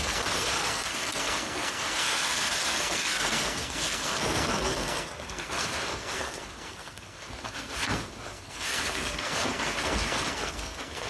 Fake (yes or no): yes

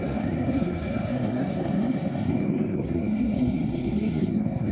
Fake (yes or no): yes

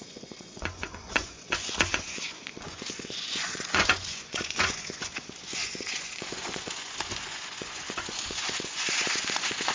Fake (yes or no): yes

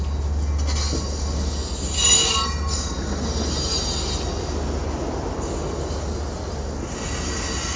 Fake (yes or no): no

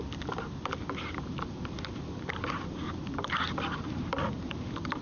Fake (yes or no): no